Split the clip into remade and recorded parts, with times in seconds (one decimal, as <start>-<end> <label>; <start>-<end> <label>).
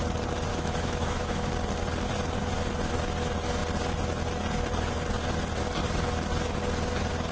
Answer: 0.0-0.5 recorded; 0.5-1.5 remade; 1.5-7.3 recorded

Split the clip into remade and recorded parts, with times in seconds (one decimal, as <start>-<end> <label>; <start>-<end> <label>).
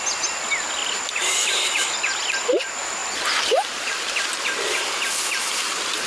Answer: 0.0-6.1 recorded